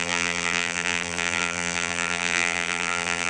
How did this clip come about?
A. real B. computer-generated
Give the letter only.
B